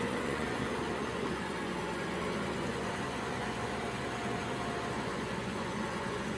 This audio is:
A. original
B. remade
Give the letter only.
B